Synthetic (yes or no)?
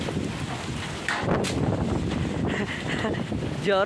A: no